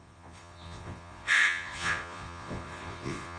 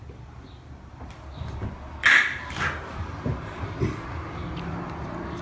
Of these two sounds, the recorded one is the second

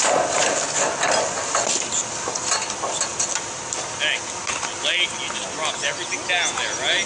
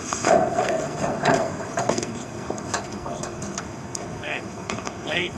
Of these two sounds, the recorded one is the first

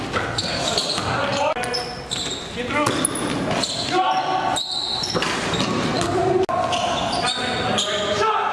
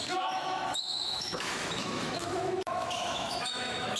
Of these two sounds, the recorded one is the first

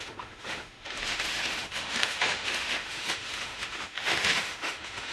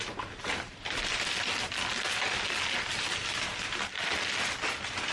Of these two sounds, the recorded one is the second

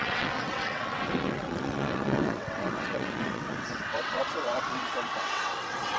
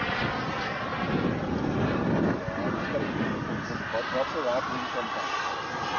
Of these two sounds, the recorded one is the second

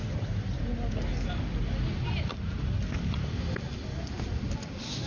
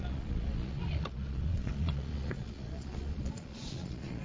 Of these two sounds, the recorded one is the first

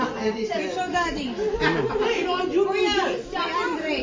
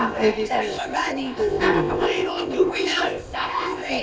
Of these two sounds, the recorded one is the first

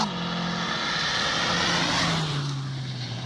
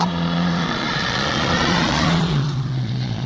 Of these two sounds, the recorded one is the first